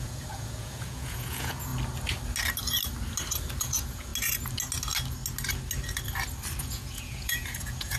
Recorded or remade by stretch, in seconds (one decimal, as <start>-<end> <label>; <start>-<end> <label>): 0.0-1.7 remade; 1.7-3.6 recorded; 3.6-4.1 remade; 4.1-6.6 recorded; 6.6-8.0 remade